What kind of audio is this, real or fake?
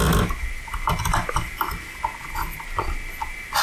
real